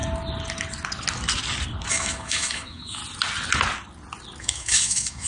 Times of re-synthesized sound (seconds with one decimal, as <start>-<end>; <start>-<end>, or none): 1.9-3.0; 4.4-5.3